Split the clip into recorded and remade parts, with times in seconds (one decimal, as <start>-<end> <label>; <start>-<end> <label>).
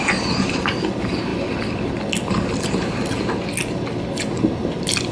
0.0-5.1 recorded